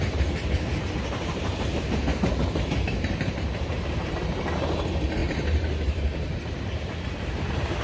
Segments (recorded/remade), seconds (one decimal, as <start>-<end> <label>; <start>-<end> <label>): 0.0-7.8 remade